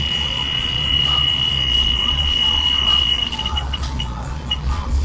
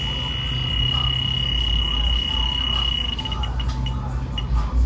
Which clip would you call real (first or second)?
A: second